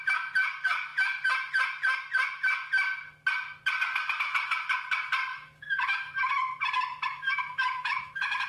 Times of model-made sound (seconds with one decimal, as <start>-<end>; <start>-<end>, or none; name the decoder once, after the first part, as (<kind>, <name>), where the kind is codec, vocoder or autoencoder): 5.3-6.3 (autoencoder, DAC-VAE); 7.1-8.5